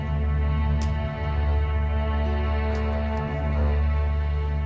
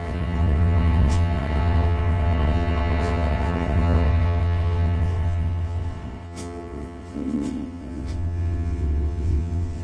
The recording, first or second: first